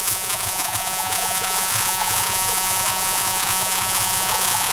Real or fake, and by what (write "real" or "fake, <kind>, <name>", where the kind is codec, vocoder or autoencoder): fake, vocoder, Vocos